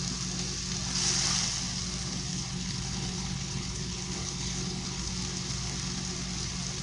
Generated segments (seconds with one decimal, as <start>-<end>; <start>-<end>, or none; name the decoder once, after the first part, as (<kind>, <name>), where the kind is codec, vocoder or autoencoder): 2.3-5.1 (codec, HILCodec)